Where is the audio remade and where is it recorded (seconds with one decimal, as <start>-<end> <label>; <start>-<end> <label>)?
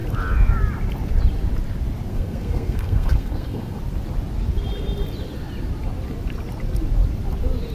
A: 0.0-2.1 recorded; 2.1-3.8 remade; 3.8-7.7 recorded